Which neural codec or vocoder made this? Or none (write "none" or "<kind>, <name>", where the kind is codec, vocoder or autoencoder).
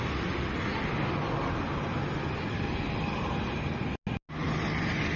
none